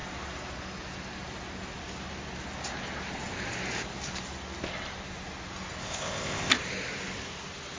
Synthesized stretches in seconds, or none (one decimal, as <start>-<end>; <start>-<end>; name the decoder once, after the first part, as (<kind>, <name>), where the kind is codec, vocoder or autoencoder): 5.8-6.5 (codec, ZipCodec)